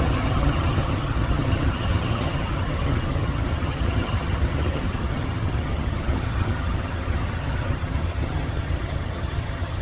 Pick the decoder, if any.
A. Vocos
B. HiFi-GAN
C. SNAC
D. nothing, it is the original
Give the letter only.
B